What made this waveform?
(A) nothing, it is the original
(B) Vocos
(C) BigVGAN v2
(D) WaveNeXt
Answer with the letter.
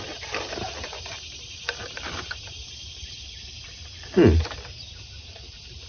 C